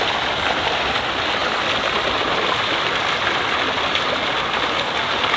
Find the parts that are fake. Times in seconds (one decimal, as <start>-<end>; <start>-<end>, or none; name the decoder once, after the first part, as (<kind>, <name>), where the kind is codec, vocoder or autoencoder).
none